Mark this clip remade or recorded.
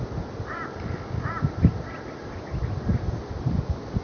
recorded